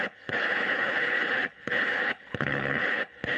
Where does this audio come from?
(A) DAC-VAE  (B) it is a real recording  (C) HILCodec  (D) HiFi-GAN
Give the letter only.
C